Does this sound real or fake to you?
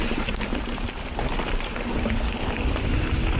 real